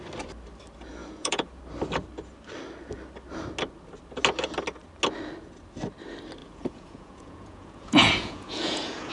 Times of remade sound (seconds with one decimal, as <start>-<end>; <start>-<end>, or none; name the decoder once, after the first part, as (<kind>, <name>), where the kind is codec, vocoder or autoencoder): 1.0-1.6 (vocoder, Vocos); 6.4-9.1